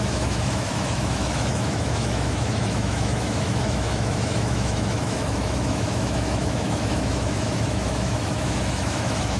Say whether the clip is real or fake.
fake